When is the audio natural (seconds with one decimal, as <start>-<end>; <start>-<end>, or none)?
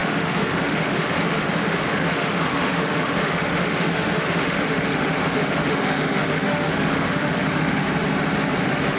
7.8-8.6